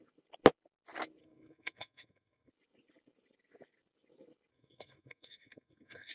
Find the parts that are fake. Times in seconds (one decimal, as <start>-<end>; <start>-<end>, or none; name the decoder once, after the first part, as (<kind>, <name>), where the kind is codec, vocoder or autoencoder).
1.2-2.5 (codec, SNAC); 4.5-6.1